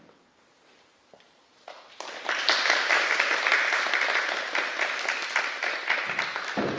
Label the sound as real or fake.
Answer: real